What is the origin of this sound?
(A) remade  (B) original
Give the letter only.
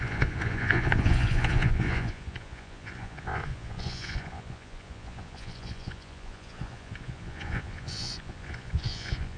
A